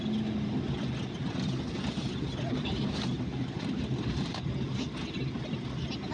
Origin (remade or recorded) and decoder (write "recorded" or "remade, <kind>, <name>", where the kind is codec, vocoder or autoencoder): recorded